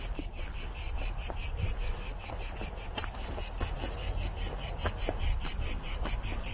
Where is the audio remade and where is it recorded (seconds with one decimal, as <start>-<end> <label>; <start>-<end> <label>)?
0.0-6.5 remade